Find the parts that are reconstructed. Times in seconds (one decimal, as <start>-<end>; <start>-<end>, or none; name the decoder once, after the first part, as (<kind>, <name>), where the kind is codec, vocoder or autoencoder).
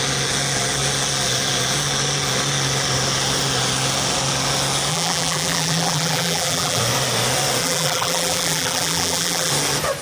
4.9-6.8 (vocoder, BigVGAN v2); 7.6-9.5